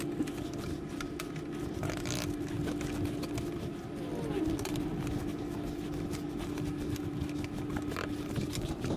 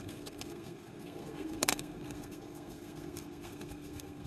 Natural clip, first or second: first